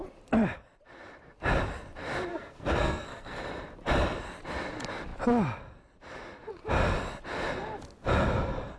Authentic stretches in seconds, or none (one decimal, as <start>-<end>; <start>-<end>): 0.0-2.3; 3.4-8.8